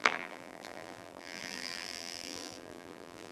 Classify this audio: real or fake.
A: fake